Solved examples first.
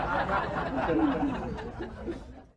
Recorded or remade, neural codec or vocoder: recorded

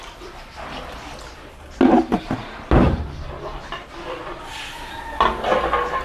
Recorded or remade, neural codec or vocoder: recorded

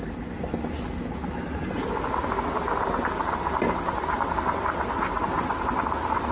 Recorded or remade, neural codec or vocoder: recorded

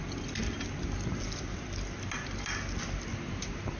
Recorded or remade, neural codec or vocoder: recorded